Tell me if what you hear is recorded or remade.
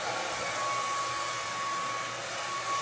recorded